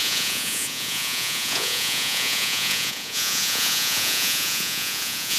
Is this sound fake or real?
fake